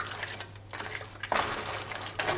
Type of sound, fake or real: real